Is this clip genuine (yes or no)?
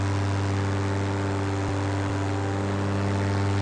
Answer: yes